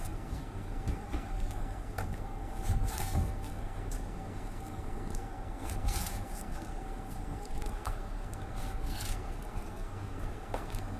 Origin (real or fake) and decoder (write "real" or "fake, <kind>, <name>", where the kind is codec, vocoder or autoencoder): fake, codec, SNAC